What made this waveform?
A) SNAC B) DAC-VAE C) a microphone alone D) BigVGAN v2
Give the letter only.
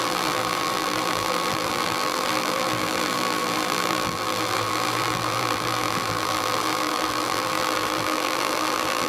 D